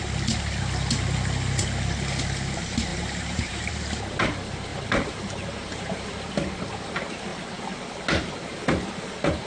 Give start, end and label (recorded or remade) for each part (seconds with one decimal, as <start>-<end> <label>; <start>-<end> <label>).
0.0-2.9 recorded; 2.9-3.7 remade; 3.7-4.7 recorded; 4.7-6.3 remade; 6.3-9.5 recorded